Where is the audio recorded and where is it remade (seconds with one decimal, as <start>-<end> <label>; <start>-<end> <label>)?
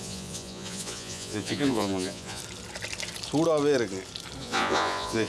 0.0-2.4 remade; 2.4-4.4 recorded; 4.4-5.3 remade